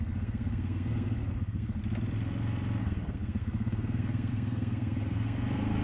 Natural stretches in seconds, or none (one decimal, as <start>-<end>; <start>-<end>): 1.8-2.8